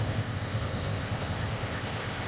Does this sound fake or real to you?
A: fake